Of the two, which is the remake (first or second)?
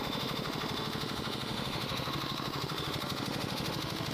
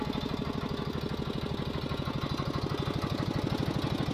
first